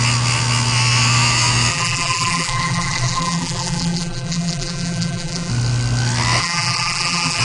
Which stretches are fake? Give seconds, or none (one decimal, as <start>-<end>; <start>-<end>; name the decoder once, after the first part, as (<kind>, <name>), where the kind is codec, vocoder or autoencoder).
1.7-5.5 (vocoder, BigVGAN v2); 6.4-7.4